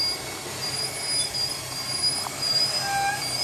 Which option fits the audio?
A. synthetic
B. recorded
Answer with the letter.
B